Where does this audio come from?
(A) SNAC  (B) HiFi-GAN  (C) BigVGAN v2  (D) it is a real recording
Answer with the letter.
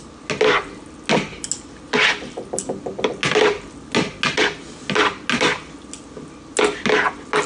D